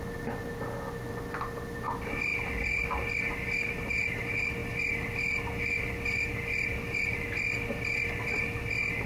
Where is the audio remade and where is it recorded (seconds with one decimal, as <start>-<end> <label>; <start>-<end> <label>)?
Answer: 0.0-9.1 recorded